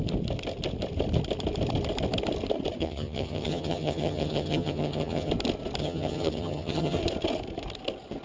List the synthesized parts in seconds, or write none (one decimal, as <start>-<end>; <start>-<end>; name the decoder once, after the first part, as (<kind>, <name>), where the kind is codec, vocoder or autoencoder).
2.8-5.3 (vocoder, HiFi-GAN); 5.8-7.0